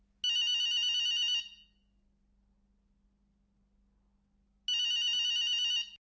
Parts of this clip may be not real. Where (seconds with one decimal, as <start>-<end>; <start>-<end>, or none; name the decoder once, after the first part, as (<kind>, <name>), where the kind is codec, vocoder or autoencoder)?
none